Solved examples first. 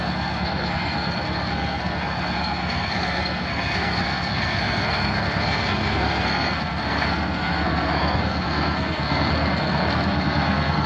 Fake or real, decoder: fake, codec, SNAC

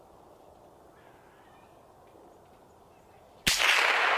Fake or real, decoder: real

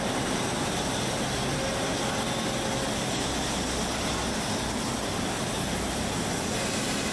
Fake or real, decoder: real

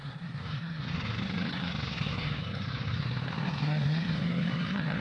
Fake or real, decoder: fake, codec, SNAC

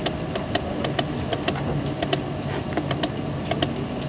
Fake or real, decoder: real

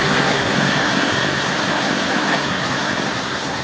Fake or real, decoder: fake, codec, SNAC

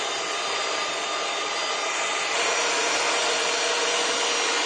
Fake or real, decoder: real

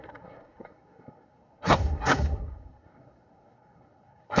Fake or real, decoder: fake, codec, SNAC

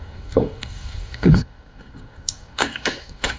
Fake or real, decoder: fake, codec, SNAC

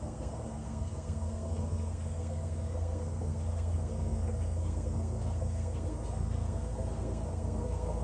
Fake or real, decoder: fake, codec, SNAC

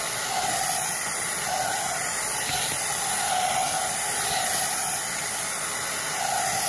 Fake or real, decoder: real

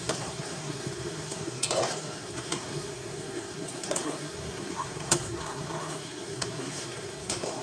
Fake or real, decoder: fake, codec, SNAC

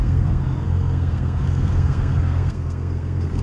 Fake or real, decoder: fake, codec, SNAC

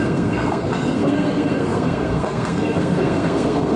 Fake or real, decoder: fake, codec, SNAC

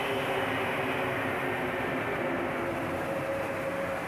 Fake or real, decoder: real